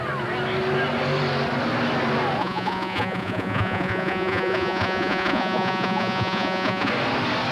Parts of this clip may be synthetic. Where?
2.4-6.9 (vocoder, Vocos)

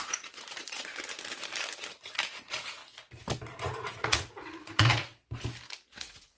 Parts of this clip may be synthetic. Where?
0.0-0.9 (vocoder, Vocos); 1.9-2.8; 3.6-5.1; 6.0-6.4

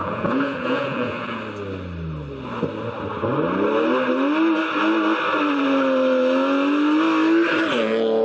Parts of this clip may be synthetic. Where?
0.0-1.4 (vocoder, Vocos)

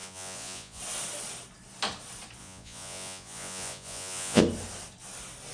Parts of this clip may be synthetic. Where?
0.0-0.8 (vocoder, Vocos); 2.4-4.4

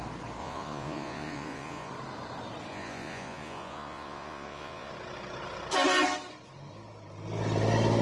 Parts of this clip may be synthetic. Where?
0.4-1.9 (vocoder, Vocos); 2.7-4.9

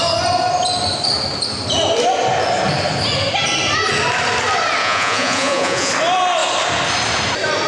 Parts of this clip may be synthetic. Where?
4.8-5.9 (vocoder, Vocos)

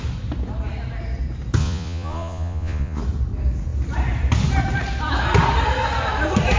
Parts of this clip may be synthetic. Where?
1.6-3.0 (vocoder, Vocos)

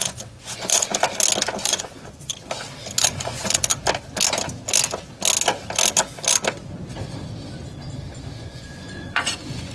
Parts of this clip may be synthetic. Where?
0.0-0.9 (vocoder, Vocos); 1.6-2.3; 3.0-3.7; 8.4-9.7